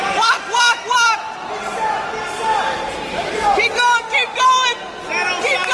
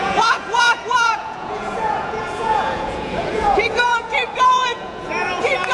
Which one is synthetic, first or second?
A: second